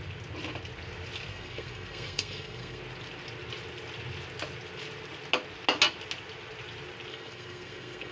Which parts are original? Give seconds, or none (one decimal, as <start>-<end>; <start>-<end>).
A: 0.0-1.3; 2.8-7.1